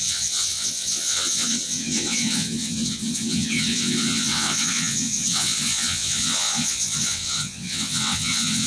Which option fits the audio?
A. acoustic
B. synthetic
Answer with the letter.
B